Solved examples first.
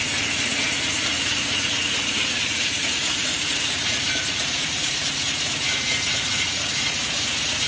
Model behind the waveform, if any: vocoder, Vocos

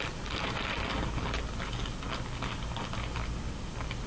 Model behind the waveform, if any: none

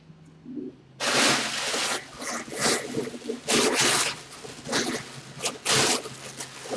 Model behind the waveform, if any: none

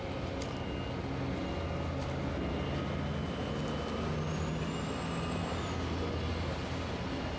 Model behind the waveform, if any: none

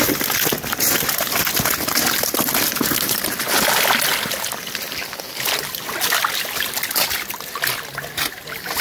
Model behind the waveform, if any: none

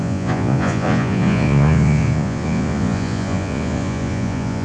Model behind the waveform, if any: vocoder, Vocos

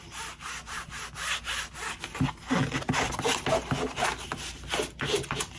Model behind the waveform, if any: none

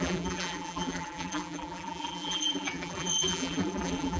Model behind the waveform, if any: vocoder, BigVGAN v2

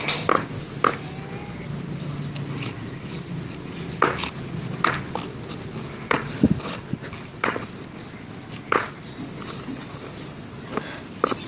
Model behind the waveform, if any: none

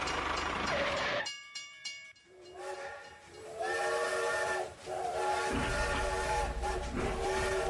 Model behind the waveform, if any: vocoder, BigVGAN v2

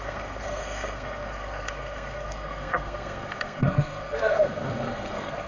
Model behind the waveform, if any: codec, SNAC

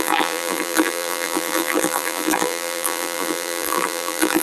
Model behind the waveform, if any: vocoder, BigVGAN v2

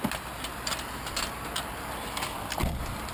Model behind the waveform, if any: none